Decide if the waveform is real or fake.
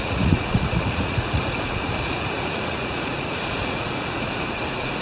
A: fake